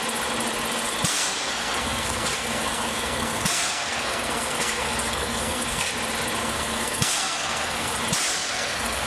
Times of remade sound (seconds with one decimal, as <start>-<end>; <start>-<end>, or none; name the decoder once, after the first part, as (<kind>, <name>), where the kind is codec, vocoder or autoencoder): 1.1-5.9 (codec, SNAC); 6.4-7.9; 8.3-9.1